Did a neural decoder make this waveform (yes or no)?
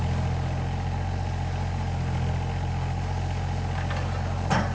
no